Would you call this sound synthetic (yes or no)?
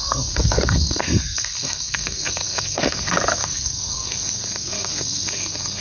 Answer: yes